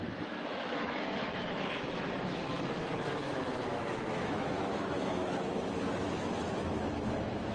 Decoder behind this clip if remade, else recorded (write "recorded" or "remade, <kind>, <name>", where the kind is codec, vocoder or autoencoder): remade, autoencoder, DAC-VAE